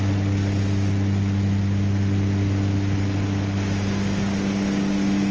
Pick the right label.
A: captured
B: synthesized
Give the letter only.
A